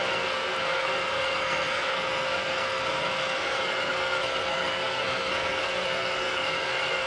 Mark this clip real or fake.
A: fake